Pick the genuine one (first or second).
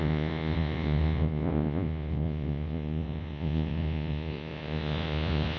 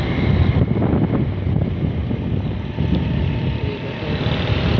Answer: second